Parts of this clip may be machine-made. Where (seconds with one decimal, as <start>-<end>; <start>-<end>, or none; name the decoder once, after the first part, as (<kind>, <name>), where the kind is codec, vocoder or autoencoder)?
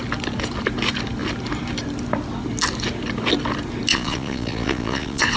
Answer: 3.9-5.4 (vocoder, Vocos)